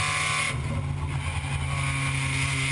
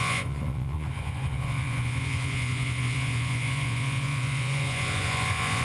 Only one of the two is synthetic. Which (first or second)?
second